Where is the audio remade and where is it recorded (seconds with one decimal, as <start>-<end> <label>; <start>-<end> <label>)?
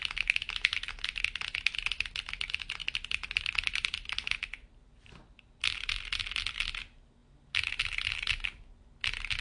0.0-2.8 recorded; 2.8-5.6 remade; 5.6-9.4 recorded